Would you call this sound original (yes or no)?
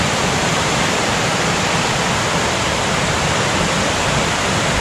no